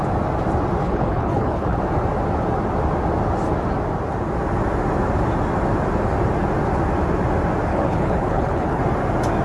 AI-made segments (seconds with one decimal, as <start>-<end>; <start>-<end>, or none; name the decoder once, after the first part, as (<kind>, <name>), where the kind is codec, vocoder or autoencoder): 0.8-1.8 (codec, HILCodec); 7.7-8.8